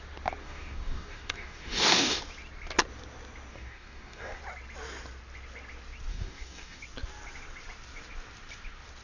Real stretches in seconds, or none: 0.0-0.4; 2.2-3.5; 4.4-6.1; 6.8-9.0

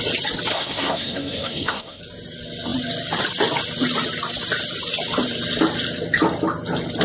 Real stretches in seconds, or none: 0.0-0.5; 2.0-7.0

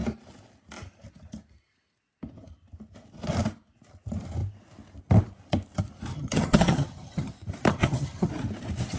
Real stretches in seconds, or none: 0.0-6.1; 7.3-7.7; 8.3-9.0

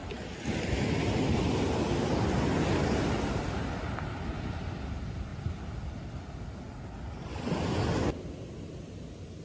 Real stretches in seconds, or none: 0.0-9.4

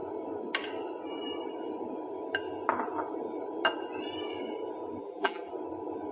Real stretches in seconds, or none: 0.0-5.0; 5.5-6.1

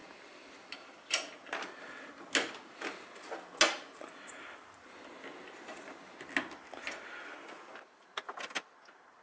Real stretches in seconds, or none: 0.0-9.2

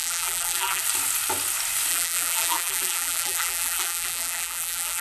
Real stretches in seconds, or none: 0.8-1.9

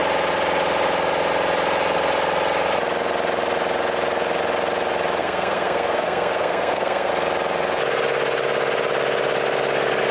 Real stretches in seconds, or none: 0.0-5.2; 7.1-10.1